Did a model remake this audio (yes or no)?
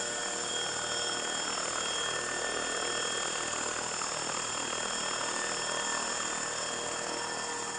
no